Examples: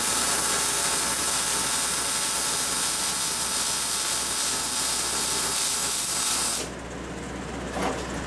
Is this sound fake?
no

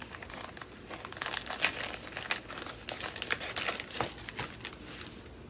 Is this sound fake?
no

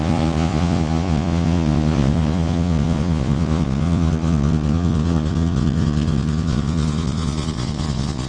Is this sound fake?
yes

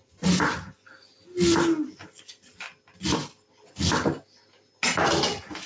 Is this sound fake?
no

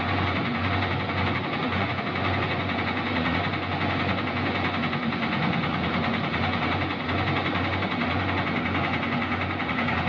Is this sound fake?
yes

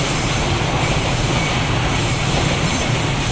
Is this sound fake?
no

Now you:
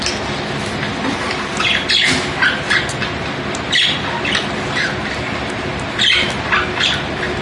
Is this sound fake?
no